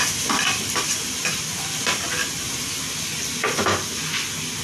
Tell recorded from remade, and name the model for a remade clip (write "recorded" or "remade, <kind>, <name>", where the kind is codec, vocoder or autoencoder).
recorded